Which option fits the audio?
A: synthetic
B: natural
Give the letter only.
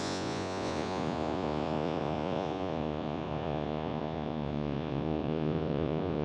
A